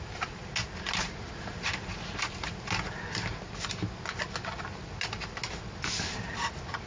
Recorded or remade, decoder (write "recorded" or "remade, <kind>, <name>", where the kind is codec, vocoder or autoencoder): recorded